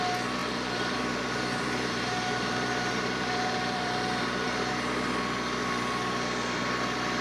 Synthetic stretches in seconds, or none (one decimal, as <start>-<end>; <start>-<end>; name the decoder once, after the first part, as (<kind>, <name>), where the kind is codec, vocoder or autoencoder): 0.4-4.7 (vocoder, BigVGAN v2)